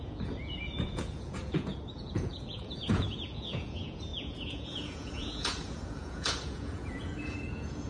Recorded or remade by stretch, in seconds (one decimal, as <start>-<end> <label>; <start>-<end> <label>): 0.0-7.9 remade